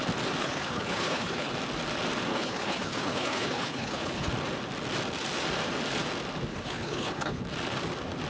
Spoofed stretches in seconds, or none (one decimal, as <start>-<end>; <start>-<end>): 0.4-1.5; 2.3-4.3; 6.5-7.4